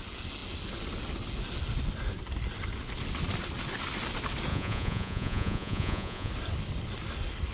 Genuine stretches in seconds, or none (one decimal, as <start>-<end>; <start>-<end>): 0.0-4.5; 6.3-7.5